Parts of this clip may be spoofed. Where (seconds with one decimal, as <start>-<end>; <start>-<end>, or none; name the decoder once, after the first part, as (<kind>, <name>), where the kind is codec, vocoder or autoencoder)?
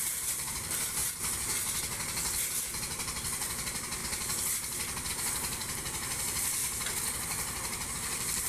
0.0-1.0 (vocoder, BigVGAN v2); 2.6-4.0; 5.1-6.6; 7.9-8.5